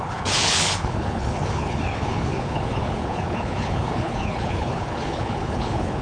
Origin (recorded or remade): remade